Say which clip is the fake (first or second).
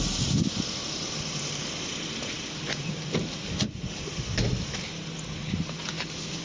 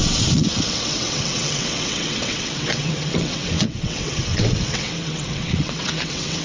second